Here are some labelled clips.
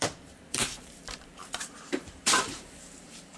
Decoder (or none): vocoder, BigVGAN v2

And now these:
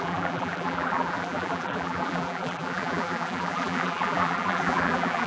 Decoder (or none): vocoder, BigVGAN v2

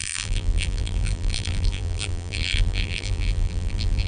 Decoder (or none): vocoder, BigVGAN v2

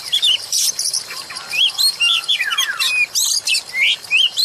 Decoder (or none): none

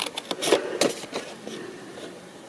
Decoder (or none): vocoder, BigVGAN v2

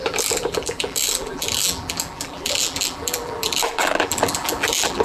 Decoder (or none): vocoder, BigVGAN v2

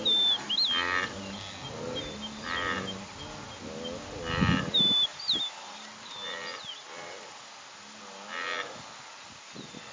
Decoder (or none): none